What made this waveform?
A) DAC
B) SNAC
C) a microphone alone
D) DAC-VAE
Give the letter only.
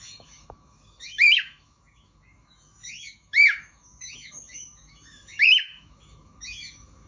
D